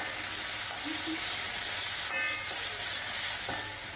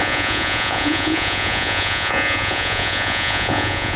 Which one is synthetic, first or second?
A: second